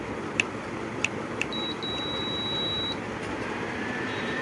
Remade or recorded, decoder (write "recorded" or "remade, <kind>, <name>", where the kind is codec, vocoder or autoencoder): recorded